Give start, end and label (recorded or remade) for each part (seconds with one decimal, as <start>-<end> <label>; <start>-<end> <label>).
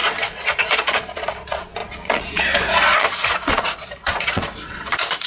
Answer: 0.0-5.3 remade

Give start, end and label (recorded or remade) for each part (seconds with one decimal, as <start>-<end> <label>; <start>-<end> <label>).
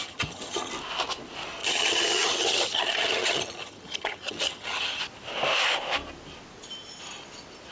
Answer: 0.0-0.7 remade; 0.7-1.6 recorded; 1.6-5.0 remade; 5.0-7.7 recorded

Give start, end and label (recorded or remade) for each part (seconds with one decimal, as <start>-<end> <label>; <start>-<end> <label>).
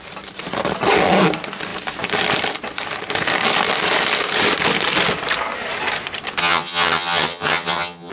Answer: 0.0-6.4 recorded; 6.4-8.1 remade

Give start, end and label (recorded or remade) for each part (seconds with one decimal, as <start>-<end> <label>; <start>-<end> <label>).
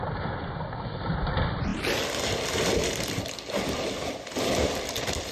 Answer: 0.0-1.7 remade; 1.7-3.6 recorded; 3.6-5.3 remade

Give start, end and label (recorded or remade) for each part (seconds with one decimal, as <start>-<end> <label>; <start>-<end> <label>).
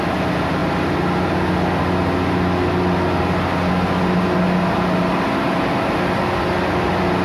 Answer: 0.0-7.2 recorded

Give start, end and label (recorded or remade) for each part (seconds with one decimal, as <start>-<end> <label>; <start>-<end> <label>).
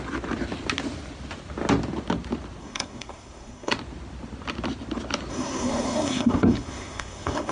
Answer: 0.0-2.6 recorded; 2.6-3.7 remade; 3.7-5.3 recorded; 5.3-7.5 remade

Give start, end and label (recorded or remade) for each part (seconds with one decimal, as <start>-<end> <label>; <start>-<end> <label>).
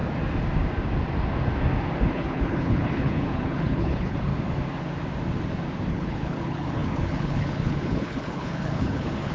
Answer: 0.0-2.1 recorded; 2.1-4.3 remade; 4.3-5.9 recorded; 5.9-9.3 remade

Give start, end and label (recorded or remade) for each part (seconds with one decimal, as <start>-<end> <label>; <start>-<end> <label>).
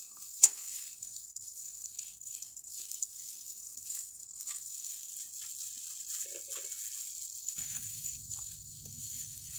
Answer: 0.0-5.1 remade; 5.1-7.4 recorded; 7.4-9.6 remade